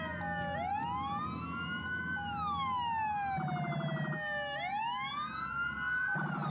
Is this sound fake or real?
real